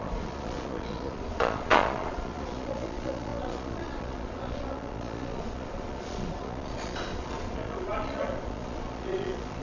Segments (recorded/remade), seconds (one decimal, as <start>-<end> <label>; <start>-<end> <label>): 0.0-9.6 remade